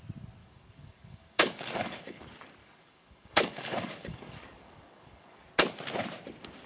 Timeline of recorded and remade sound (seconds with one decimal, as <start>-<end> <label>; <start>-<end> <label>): 0.0-0.4 recorded; 0.4-2.2 remade; 2.2-2.6 recorded; 2.6-5.5 remade; 5.5-6.7 recorded

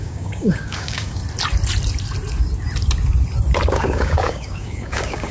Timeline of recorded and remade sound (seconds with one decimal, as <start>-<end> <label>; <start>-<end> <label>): 0.0-1.2 remade; 1.2-3.7 recorded; 3.7-5.3 remade

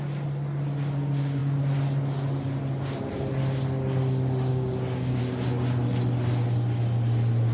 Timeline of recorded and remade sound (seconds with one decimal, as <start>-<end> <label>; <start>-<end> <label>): 0.0-4.5 recorded; 4.5-5.2 remade; 5.2-7.5 recorded

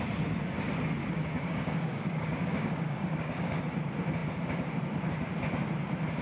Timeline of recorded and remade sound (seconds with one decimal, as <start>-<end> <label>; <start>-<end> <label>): 0.0-1.0 recorded; 1.0-3.6 remade; 3.6-6.2 recorded

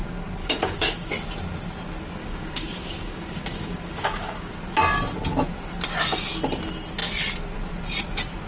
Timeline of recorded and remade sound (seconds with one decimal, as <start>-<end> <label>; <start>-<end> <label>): 0.0-0.4 recorded; 0.4-1.1 remade; 1.1-2.2 recorded; 2.2-4.5 remade; 4.5-8.5 recorded

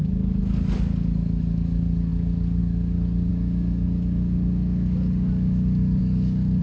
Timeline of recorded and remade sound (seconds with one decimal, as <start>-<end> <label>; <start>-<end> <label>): 0.0-6.6 remade

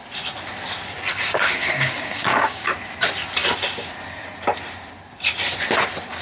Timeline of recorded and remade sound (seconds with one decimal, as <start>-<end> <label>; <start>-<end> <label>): 0.0-1.1 recorded; 1.1-2.6 remade; 2.6-6.2 recorded